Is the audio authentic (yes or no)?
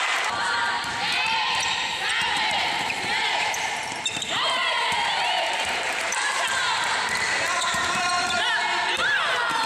no